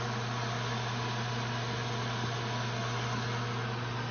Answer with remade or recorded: recorded